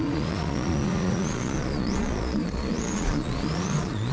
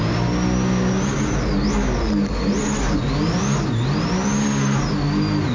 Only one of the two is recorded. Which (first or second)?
second